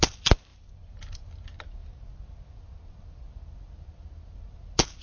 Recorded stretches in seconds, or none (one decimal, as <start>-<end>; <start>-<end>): 0.0-0.5; 1.3-5.0